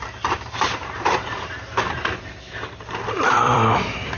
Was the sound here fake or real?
fake